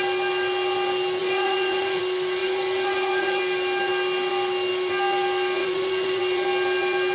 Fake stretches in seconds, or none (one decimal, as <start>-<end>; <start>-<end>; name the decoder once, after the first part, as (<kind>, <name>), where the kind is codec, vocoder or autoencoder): 1.2-2.0 (vocoder, Vocos); 2.4-3.4; 5.6-6.2